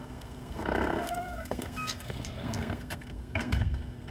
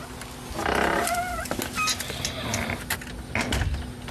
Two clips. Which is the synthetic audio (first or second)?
first